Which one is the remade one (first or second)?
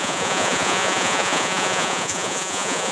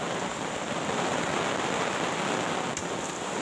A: first